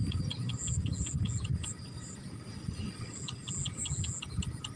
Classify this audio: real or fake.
real